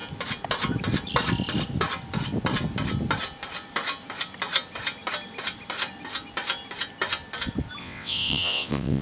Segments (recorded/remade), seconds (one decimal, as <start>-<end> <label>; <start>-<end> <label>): 0.0-7.8 recorded; 7.8-9.0 remade